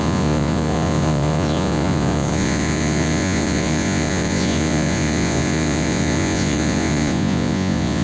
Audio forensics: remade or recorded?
remade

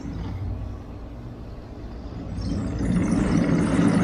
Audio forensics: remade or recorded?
recorded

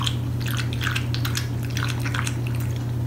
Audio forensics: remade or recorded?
recorded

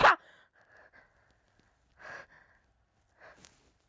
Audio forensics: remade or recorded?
recorded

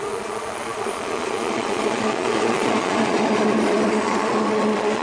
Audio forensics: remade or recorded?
remade